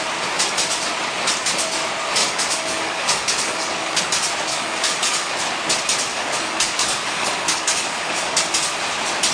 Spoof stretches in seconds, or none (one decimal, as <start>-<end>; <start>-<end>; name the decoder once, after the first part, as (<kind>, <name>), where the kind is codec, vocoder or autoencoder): 2.2-4.0 (codec, DAC); 4.5-5.3; 6.1-8.5